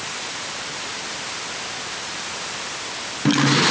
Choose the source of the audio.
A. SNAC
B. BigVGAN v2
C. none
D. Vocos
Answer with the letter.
C